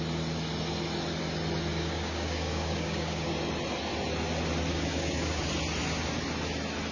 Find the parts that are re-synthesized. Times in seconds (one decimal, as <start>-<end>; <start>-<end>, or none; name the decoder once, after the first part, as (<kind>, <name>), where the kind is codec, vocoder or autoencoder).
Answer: 1.7-3.3 (codec, DAC); 4.7-5.4